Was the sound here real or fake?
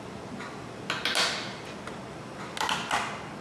real